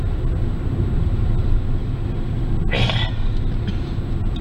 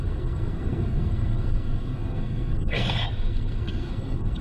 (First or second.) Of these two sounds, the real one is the first